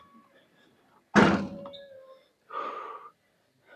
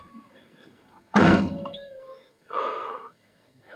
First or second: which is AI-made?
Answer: second